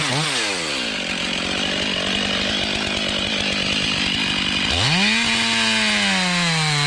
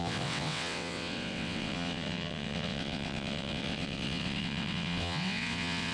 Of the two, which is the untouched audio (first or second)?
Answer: first